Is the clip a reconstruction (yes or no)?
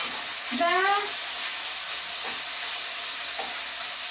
no